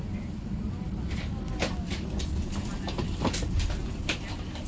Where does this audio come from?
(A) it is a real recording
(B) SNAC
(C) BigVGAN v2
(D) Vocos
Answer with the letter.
A